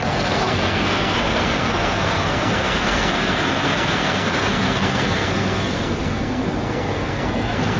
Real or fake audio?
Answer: fake